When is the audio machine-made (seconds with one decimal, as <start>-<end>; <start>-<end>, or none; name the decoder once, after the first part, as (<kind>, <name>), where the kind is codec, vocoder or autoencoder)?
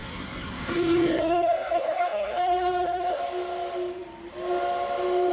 0.0-3.2 (codec, SNAC)